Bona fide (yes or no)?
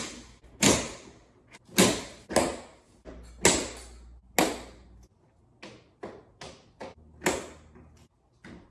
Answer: yes